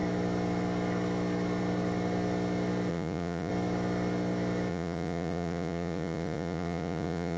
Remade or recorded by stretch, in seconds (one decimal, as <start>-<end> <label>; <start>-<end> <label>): 0.0-2.9 recorded; 2.9-3.5 remade; 3.5-4.7 recorded; 4.7-7.4 remade